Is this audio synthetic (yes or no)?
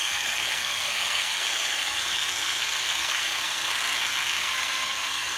yes